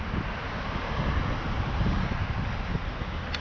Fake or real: real